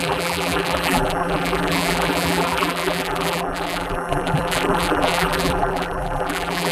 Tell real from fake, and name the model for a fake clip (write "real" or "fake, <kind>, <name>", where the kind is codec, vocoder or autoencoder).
fake, vocoder, BigVGAN v2